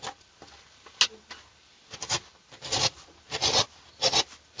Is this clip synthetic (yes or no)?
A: no